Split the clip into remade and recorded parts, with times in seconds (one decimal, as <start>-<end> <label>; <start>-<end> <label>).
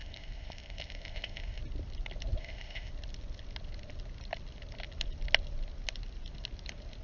0.0-1.6 remade; 1.6-2.4 recorded; 2.4-2.9 remade; 2.9-7.0 recorded